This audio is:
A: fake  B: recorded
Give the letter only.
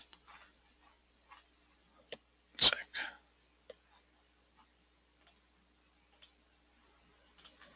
A